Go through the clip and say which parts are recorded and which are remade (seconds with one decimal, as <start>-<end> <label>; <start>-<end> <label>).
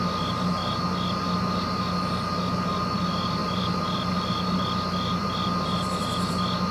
0.0-3.4 recorded; 3.4-4.6 remade; 4.6-5.2 recorded; 5.2-6.0 remade; 6.0-6.7 recorded